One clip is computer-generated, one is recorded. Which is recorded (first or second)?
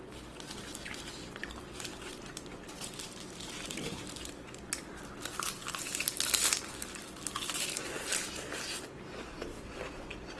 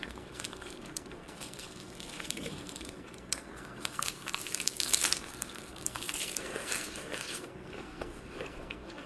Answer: first